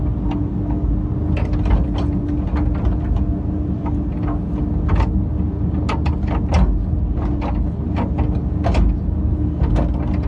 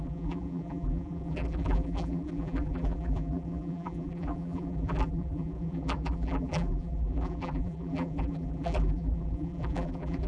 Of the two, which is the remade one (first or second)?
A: second